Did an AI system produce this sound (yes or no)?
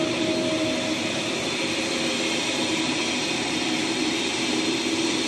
no